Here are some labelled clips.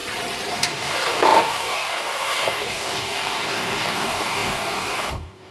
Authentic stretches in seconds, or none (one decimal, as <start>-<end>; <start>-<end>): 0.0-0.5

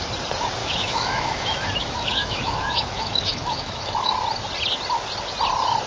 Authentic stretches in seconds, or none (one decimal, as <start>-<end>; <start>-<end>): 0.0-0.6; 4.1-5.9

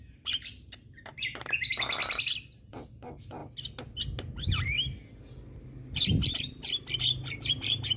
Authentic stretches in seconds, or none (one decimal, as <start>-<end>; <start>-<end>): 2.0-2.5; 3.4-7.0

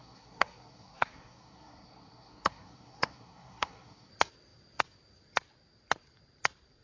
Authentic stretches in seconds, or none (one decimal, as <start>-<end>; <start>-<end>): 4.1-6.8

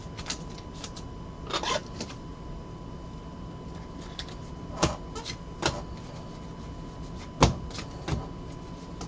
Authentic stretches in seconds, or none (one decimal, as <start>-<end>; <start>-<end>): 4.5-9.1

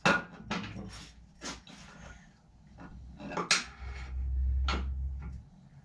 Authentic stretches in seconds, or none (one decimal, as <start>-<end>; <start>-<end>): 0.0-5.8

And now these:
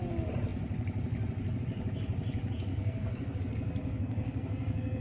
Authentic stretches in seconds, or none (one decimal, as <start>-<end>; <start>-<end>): 0.0-2.7; 3.4-3.8